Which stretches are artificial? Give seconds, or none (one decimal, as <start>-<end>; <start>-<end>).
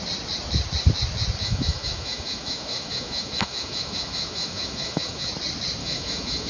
1.4-5.3; 5.8-6.5